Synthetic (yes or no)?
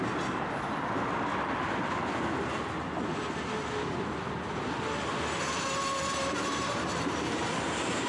no